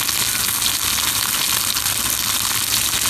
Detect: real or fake real